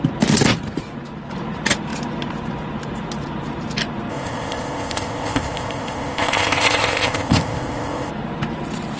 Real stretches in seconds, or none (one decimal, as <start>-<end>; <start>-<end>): 0.0-4.1; 8.1-9.0